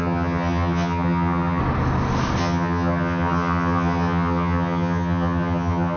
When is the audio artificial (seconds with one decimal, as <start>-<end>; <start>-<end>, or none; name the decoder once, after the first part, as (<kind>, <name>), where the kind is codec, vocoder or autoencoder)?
0.0-1.6 (vocoder, HiFi-GAN); 2.4-6.0